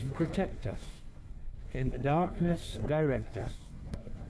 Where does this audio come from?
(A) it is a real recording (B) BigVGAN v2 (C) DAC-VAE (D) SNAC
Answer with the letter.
D